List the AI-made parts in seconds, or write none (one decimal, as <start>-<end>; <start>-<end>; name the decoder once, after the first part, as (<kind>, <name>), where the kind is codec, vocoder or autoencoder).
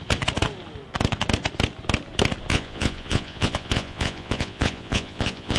2.5-5.6 (vocoder, Vocos)